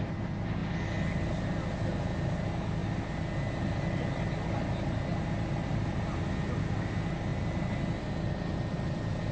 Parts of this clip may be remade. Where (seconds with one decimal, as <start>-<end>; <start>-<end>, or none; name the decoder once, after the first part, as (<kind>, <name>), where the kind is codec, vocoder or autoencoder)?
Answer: none